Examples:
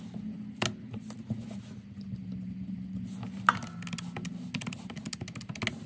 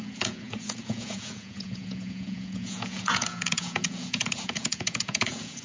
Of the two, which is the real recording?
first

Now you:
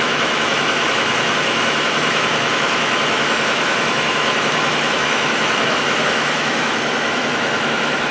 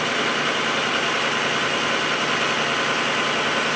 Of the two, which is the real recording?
second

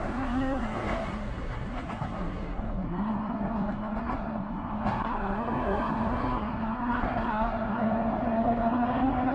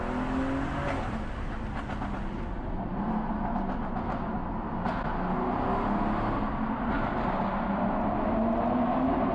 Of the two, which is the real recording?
second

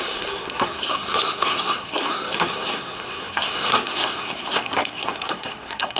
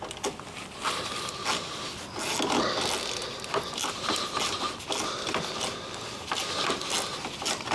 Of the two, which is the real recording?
second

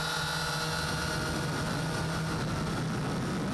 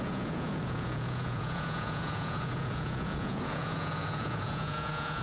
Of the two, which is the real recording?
first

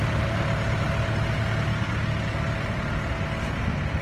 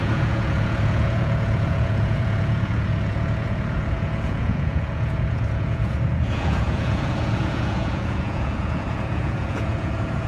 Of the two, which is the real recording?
first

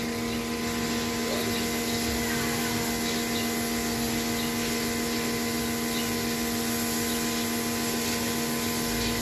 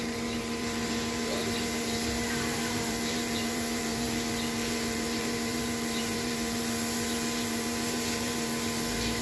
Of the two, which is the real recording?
first